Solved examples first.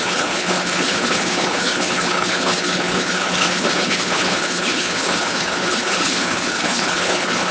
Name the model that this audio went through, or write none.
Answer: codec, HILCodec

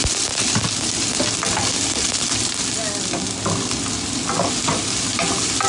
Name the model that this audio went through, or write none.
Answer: none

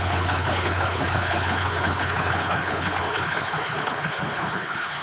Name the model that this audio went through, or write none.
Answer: codec, HILCodec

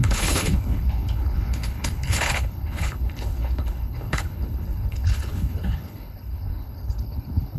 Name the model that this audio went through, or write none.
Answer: codec, HILCodec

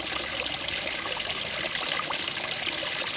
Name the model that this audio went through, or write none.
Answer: none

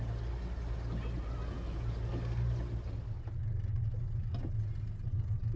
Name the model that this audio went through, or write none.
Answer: none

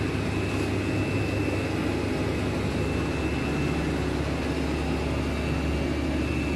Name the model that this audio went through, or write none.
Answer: none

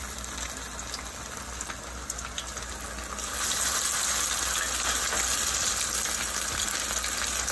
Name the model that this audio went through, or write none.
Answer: none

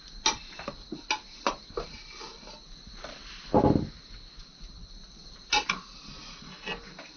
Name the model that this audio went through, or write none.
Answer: none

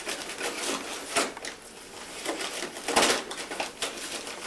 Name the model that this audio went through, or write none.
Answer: none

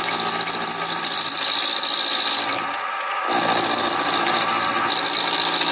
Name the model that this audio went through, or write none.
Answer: none